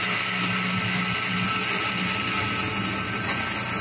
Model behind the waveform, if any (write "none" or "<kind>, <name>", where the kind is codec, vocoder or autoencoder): none